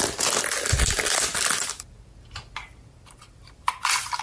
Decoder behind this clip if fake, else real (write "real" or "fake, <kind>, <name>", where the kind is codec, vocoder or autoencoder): real